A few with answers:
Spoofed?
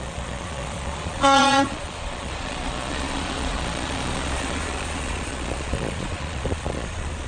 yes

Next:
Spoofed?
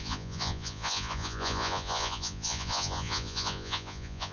yes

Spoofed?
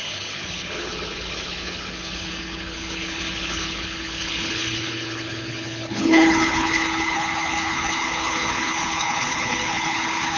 yes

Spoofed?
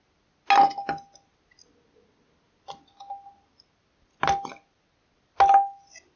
no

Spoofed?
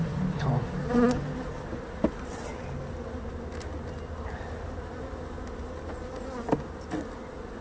no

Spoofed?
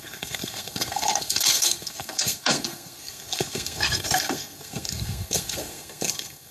yes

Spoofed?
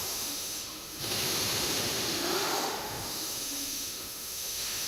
yes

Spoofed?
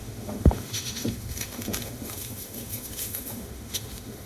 yes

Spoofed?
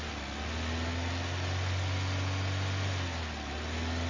no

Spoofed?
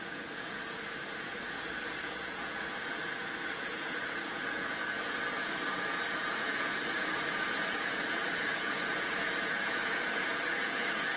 yes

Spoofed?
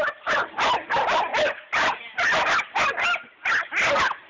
no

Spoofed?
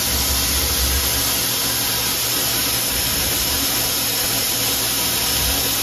no